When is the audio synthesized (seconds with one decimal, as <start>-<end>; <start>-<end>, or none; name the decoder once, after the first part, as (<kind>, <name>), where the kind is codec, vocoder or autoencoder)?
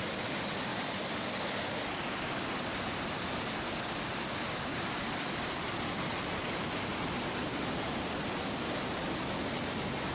none